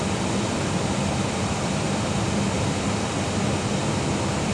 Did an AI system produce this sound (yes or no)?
no